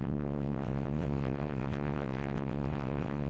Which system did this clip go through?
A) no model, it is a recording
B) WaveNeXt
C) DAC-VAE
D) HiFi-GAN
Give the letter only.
B